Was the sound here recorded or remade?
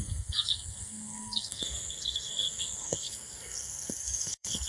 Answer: remade